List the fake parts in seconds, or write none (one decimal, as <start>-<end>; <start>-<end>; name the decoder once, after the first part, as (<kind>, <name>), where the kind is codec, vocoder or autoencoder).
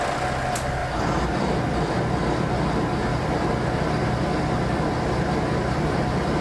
none